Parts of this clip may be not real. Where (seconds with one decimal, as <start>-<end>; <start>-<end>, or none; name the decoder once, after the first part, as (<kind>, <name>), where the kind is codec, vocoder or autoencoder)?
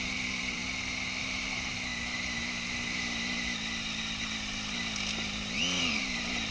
0.0-0.6 (vocoder, BigVGAN v2); 1.2-1.9; 5.8-6.5